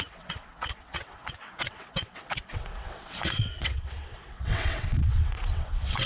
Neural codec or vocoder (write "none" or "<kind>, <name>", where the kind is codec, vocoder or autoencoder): vocoder, WaveNeXt